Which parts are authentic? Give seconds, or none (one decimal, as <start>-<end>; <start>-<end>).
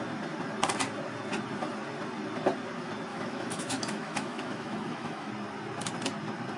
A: 0.0-3.1; 5.3-6.6